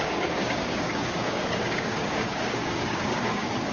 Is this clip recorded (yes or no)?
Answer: no